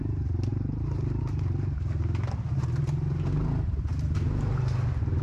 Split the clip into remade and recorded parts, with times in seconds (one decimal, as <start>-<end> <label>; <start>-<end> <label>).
0.0-5.2 recorded